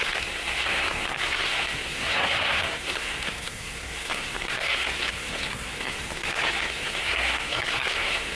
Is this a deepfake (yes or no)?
yes